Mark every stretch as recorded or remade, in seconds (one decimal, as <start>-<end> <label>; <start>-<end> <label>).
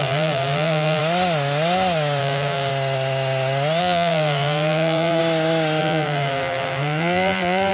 0.0-1.0 remade; 1.0-2.2 recorded; 2.2-2.7 remade; 2.7-3.8 recorded; 3.8-5.2 remade; 5.2-5.8 recorded; 5.8-7.7 remade